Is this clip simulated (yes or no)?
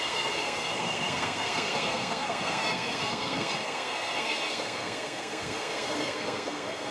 yes